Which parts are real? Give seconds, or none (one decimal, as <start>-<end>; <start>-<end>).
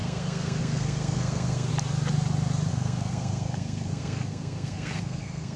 1.7-2.7